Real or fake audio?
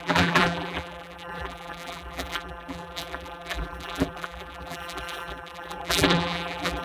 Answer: fake